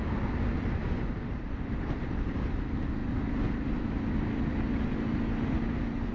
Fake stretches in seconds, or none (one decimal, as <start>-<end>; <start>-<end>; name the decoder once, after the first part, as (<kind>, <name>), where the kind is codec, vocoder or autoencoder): none